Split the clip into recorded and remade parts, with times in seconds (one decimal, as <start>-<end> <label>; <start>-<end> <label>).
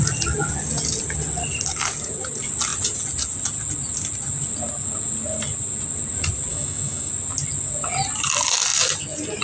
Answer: 0.0-6.5 recorded; 6.5-7.1 remade; 7.1-9.4 recorded